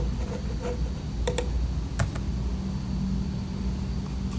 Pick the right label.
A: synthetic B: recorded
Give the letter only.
B